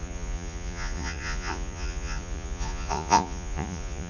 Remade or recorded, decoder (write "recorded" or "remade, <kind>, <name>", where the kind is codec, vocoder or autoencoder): remade, vocoder, Vocos